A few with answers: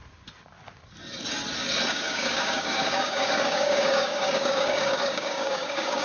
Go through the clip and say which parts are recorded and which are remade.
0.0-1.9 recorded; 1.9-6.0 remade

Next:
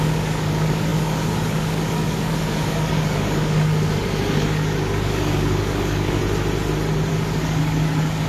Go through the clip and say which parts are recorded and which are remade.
0.0-6.2 remade; 6.2-7.1 recorded; 7.1-8.3 remade

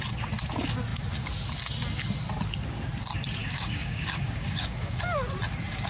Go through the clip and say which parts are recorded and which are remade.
0.0-3.4 recorded; 3.4-5.0 remade; 5.0-5.9 recorded